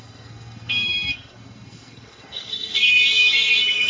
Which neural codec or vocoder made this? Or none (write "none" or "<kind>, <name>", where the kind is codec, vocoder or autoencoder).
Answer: codec, SNAC